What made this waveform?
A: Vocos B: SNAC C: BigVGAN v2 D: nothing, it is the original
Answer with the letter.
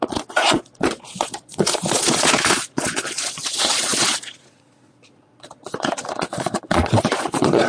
A